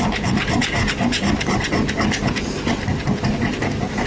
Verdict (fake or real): real